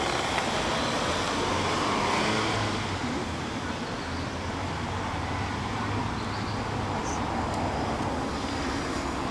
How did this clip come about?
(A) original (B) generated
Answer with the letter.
A